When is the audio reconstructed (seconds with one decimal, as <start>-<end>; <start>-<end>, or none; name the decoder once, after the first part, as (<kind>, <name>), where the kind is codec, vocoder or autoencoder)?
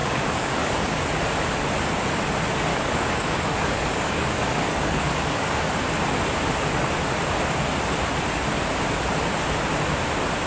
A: 0.0-1.0 (codec, DAC); 2.7-5.7